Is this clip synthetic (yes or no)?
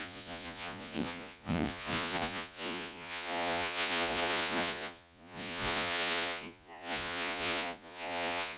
yes